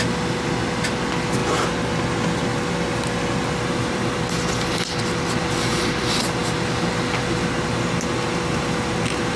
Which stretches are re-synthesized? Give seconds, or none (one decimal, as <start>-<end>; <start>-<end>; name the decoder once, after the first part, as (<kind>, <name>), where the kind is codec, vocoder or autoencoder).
none